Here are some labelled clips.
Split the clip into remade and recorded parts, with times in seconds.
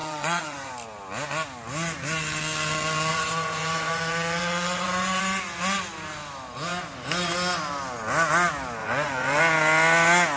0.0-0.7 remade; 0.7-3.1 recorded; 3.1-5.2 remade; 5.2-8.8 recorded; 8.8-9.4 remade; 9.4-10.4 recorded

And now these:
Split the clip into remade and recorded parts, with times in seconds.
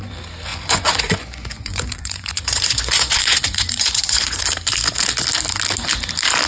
0.0-0.5 recorded; 0.5-4.4 remade; 4.4-6.5 recorded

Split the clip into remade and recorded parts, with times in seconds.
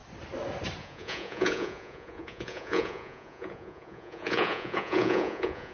0.0-0.8 recorded; 0.8-5.7 remade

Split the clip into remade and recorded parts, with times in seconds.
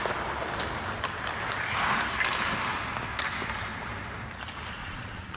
0.0-4.8 recorded; 4.8-5.4 remade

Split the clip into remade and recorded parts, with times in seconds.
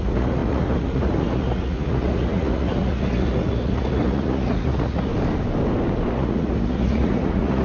0.0-5.1 remade; 5.1-6.1 recorded; 6.1-7.6 remade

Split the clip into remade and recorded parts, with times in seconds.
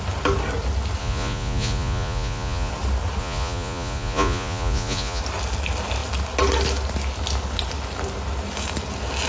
0.0-1.0 recorded; 1.0-2.7 remade; 2.7-3.2 recorded; 3.2-5.2 remade; 5.2-9.3 recorded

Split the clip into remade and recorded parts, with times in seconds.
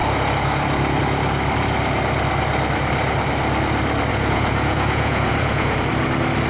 0.0-4.1 recorded; 4.1-5.8 remade; 5.8-6.5 recorded